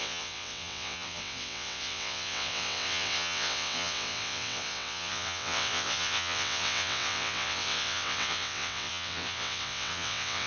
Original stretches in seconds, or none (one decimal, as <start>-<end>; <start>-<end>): none